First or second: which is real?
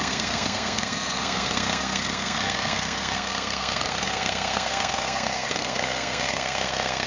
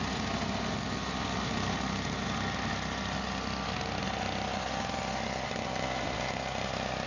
second